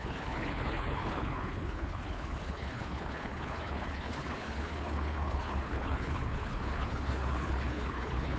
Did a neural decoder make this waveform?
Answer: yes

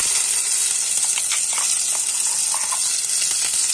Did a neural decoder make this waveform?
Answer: no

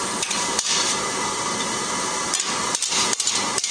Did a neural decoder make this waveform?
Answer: no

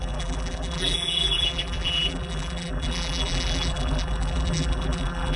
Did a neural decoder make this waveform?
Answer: yes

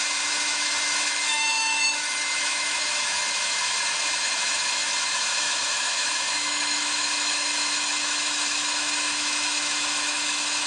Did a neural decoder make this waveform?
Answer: yes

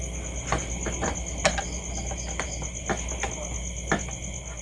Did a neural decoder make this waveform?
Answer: no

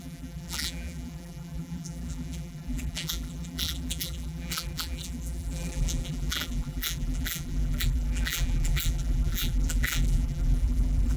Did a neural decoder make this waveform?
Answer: yes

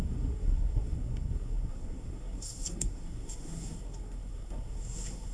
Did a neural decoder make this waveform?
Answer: yes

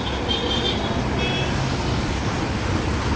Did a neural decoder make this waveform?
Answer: no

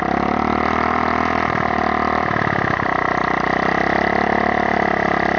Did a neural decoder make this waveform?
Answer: yes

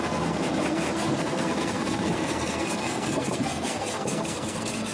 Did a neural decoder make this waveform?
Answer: yes